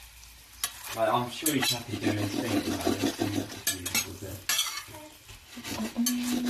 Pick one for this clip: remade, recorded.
recorded